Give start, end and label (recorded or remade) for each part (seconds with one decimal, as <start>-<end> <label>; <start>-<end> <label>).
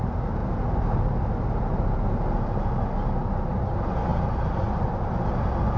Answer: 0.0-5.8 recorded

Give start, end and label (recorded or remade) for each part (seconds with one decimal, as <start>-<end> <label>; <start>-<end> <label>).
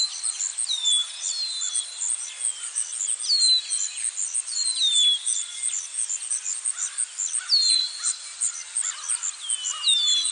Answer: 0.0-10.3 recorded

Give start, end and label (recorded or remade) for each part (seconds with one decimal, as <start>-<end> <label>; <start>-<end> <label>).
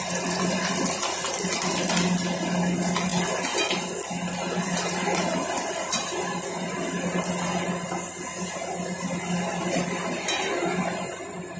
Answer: 0.0-11.6 recorded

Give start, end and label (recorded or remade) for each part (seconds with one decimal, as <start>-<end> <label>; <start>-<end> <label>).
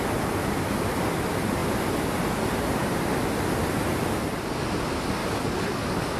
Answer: 0.0-5.2 recorded; 5.2-6.2 remade